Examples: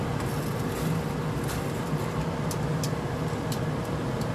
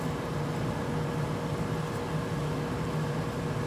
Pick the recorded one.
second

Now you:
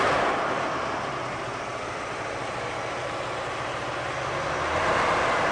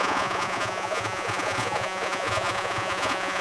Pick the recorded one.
first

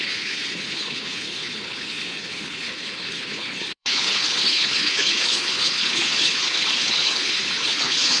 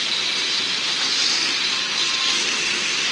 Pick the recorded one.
second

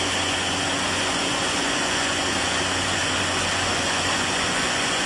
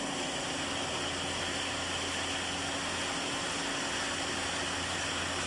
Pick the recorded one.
second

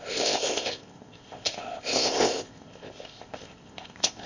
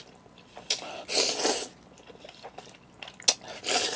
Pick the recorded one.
second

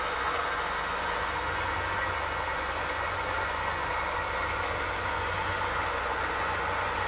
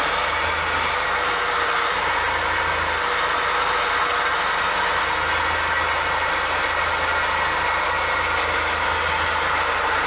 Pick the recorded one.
second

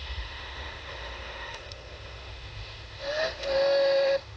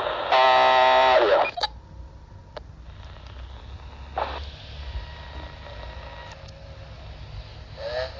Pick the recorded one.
second